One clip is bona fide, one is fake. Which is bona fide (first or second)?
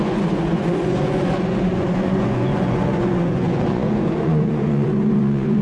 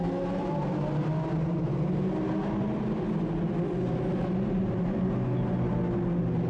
second